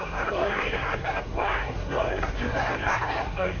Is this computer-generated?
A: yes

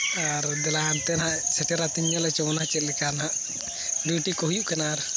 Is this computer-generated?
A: no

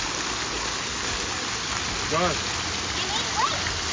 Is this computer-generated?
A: no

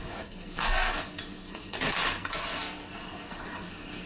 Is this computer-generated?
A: yes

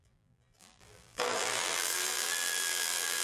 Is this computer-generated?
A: yes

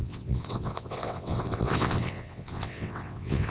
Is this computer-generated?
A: yes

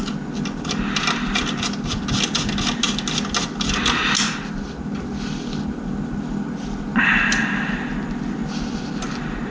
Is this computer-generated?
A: no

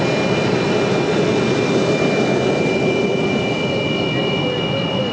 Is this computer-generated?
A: no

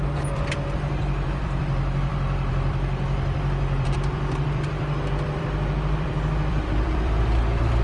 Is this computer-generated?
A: yes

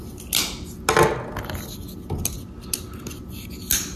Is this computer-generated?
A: no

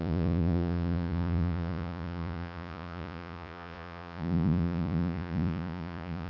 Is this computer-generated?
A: yes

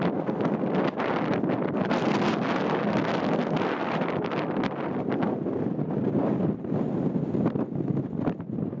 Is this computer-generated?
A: no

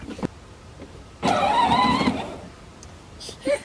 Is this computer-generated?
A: no